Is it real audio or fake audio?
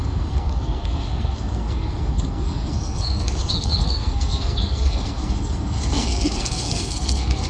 fake